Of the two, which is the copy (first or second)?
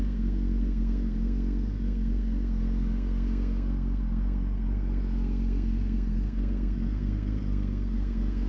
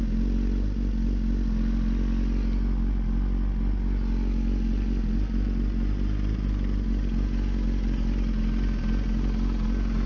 first